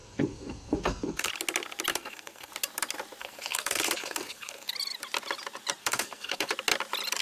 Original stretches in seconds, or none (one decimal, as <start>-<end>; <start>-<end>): 1.3-1.9; 2.5-3.2; 4.7-5.8; 6.5-7.2